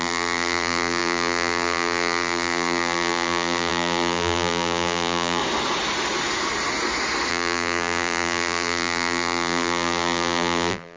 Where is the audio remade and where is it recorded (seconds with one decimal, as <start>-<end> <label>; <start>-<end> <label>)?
0.0-5.4 remade; 5.4-7.3 recorded; 7.3-11.0 remade